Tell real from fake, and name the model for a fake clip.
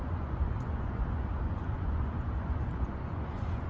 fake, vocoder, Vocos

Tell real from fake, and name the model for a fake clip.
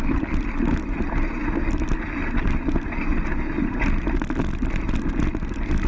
real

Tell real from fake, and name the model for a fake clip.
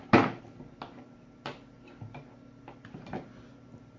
real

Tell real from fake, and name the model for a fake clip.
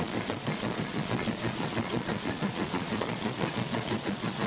fake, vocoder, Vocos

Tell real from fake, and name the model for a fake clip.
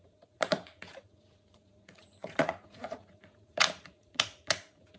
fake, vocoder, Vocos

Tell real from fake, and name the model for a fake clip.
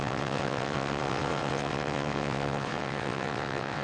fake, vocoder, WaveNeXt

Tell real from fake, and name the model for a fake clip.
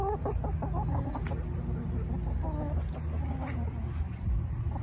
real